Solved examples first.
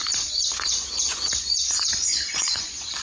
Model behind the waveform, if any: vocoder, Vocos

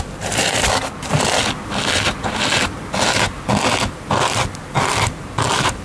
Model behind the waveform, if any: none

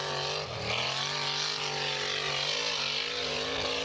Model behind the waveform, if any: none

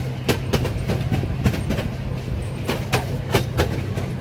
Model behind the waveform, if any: none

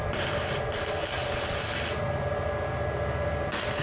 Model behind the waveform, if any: none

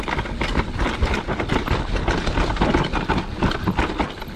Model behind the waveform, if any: none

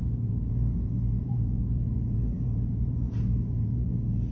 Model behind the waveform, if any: vocoder, Vocos